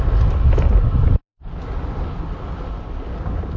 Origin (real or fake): real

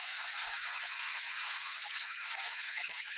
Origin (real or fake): fake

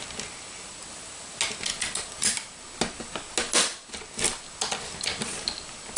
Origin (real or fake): real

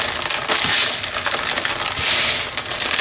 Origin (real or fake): real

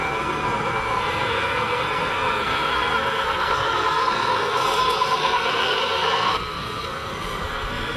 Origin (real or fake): fake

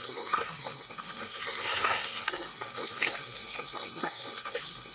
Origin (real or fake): fake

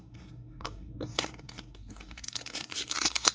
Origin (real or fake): fake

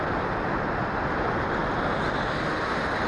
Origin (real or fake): real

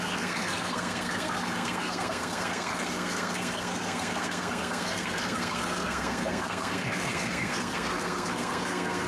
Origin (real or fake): fake